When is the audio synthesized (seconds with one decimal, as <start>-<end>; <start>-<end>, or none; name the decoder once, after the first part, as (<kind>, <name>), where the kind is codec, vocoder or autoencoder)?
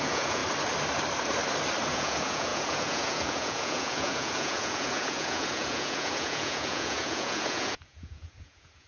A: 0.0-0.4 (vocoder, Vocos); 1.9-8.9